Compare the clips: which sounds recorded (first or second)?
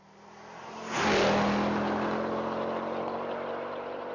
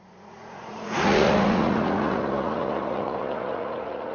first